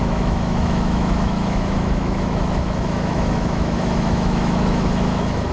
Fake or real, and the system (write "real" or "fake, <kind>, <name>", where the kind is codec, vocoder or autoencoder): fake, autoencoder, DAC-VAE